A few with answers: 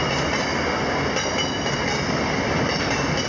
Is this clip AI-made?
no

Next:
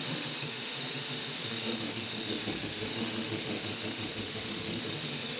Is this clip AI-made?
yes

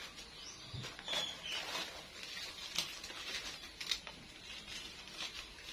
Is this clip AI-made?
no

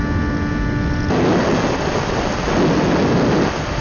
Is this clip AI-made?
no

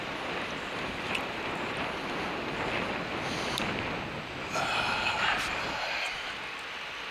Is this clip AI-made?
no